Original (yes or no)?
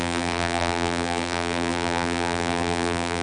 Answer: no